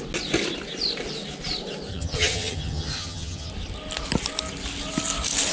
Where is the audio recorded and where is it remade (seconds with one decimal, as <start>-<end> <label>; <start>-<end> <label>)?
0.0-1.9 recorded; 1.9-3.5 remade; 3.5-5.5 recorded